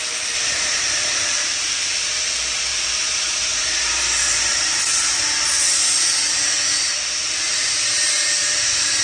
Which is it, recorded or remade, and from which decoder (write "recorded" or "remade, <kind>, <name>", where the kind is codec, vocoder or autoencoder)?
remade, vocoder, BigVGAN v2